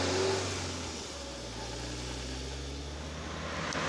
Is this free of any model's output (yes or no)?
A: yes